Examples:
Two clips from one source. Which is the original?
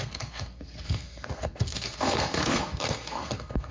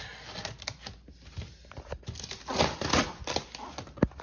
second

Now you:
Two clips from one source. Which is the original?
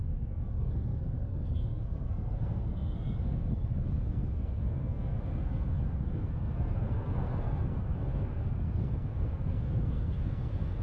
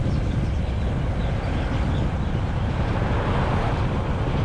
second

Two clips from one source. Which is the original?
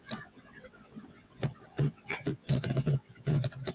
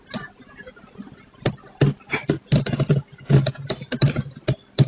second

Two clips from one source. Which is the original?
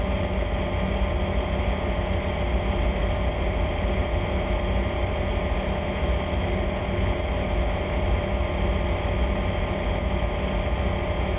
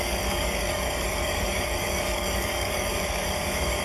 first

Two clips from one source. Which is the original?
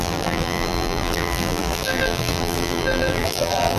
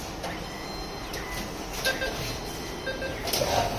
second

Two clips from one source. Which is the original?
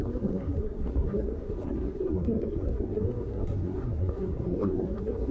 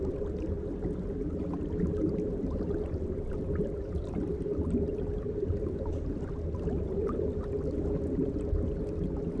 second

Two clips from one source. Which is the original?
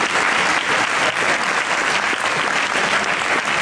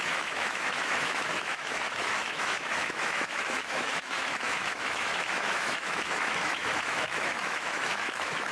first